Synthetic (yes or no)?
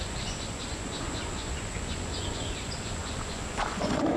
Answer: yes